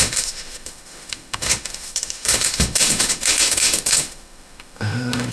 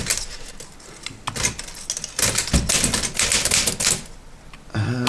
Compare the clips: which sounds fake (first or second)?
first